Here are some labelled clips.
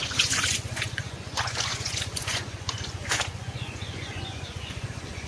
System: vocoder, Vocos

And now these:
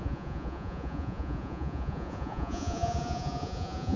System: vocoder, Vocos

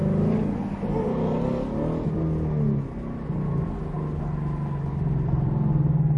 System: none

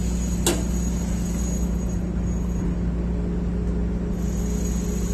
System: none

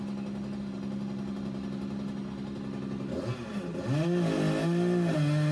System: none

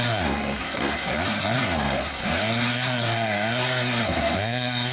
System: codec, SNAC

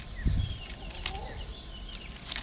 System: none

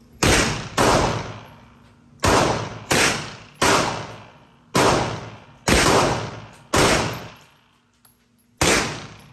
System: none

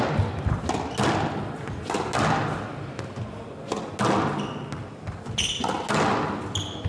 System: none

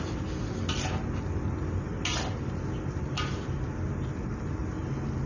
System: none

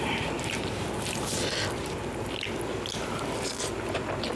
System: none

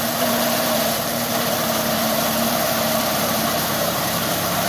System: vocoder, BigVGAN v2